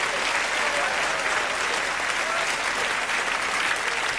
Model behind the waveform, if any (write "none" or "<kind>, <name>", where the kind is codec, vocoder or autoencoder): none